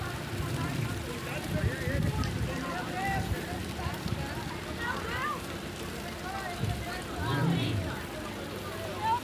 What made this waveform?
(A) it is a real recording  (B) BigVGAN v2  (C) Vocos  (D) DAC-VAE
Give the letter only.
B